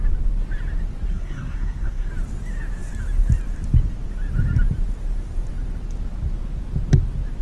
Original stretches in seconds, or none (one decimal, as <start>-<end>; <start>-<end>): 0.0-1.1; 2.1-7.4